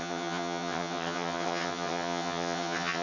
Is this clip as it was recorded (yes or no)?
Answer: no